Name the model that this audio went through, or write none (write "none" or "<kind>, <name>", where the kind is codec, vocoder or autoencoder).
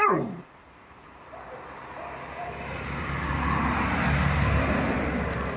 none